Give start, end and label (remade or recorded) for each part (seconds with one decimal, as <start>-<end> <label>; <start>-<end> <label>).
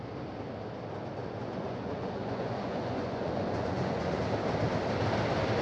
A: 0.0-1.2 recorded; 1.2-4.2 remade; 4.2-5.6 recorded